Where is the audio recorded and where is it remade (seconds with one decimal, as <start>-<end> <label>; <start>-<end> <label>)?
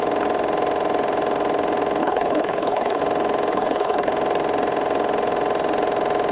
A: 0.0-2.0 recorded; 2.0-3.0 remade; 3.0-3.5 recorded; 3.5-4.1 remade; 4.1-6.3 recorded